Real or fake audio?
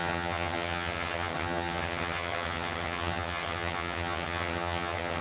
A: fake